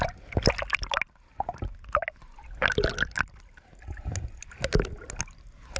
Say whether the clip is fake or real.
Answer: real